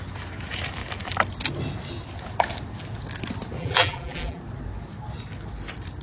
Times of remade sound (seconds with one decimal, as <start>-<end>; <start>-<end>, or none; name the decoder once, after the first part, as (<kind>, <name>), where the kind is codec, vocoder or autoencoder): 3.6-4.4 (vocoder, BigVGAN v2)